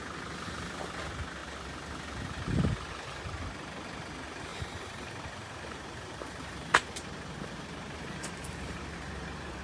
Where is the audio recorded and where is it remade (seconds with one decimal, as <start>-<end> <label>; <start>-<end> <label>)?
0.0-4.5 recorded; 4.5-9.6 remade